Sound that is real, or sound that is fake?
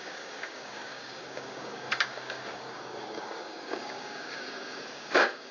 fake